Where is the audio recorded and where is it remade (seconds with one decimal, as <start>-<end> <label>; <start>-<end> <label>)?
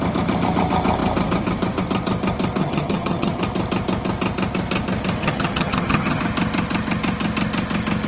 0.0-2.6 recorded; 2.6-3.4 remade; 3.4-5.2 recorded; 5.2-6.2 remade; 6.2-8.1 recorded